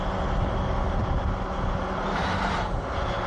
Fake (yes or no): no